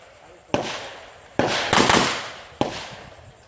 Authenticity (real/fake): fake